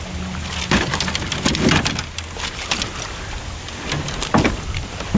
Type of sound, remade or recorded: recorded